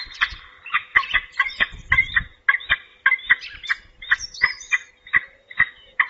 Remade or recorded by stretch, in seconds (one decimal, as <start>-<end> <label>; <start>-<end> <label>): 0.0-0.5 recorded; 0.5-2.3 remade; 2.3-2.9 recorded; 2.9-4.9 remade; 4.9-6.1 recorded